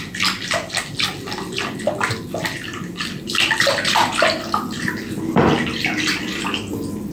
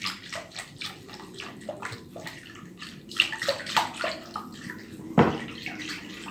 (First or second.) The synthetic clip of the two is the second